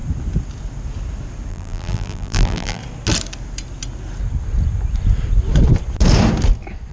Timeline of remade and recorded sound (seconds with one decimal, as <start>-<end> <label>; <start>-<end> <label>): 0.0-1.5 recorded; 1.5-2.8 remade; 2.8-6.9 recorded